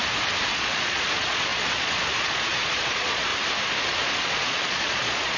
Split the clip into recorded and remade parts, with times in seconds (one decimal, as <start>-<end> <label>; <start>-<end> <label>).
0.0-0.5 recorded; 0.5-3.3 remade; 3.3-3.8 recorded; 3.8-5.4 remade

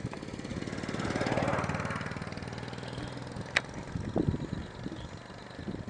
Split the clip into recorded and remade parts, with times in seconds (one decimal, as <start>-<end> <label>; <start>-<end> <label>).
0.0-5.9 recorded

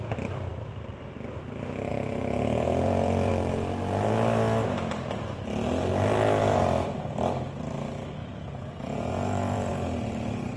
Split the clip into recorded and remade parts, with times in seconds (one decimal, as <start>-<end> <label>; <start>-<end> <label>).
0.0-1.9 recorded; 1.9-3.3 remade; 3.3-8.2 recorded; 8.2-9.7 remade; 9.7-10.6 recorded

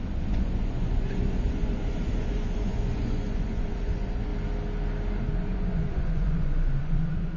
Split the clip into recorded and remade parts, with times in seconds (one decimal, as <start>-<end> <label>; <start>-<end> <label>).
0.0-4.3 remade; 4.3-5.2 recorded; 5.2-7.4 remade

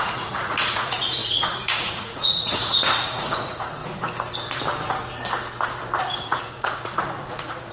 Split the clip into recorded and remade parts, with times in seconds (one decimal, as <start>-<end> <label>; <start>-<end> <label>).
0.0-3.8 remade; 3.8-6.0 recorded; 6.0-7.7 remade

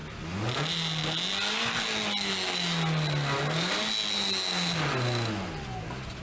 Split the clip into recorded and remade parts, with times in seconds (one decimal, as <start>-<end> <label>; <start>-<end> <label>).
0.0-6.2 recorded

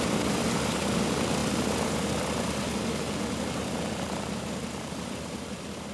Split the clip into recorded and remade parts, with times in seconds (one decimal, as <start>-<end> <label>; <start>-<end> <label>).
0.0-5.9 recorded

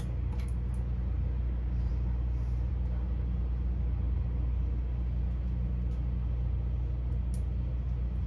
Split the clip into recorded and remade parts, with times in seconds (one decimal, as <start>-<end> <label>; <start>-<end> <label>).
0.0-8.3 recorded